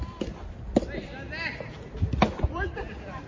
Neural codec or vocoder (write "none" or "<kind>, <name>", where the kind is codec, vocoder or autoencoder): none